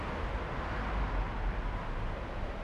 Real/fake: real